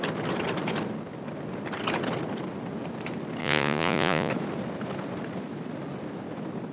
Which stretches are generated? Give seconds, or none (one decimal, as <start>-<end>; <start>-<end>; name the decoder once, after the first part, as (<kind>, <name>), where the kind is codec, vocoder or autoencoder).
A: 3.4-4.3 (vocoder, Vocos)